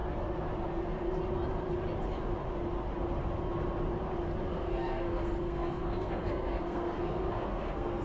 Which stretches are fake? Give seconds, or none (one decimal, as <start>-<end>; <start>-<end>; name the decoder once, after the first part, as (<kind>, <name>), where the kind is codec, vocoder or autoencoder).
4.5-8.0 (codec, SNAC)